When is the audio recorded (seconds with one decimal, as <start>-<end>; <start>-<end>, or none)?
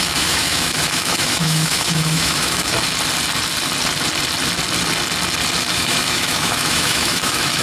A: 2.7-5.7